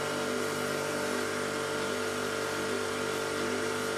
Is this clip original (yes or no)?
yes